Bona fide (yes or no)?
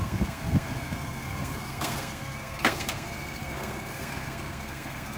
no